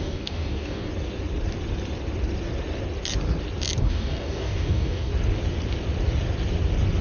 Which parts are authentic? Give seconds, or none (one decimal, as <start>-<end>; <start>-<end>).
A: 0.9-3.8; 5.1-7.0